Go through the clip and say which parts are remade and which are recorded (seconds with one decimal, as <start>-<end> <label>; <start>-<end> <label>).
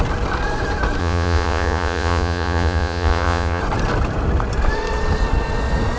0.0-1.0 recorded; 1.0-3.6 remade; 3.6-6.0 recorded